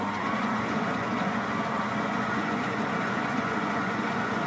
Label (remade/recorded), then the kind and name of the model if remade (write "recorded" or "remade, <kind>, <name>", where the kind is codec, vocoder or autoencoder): remade, vocoder, Vocos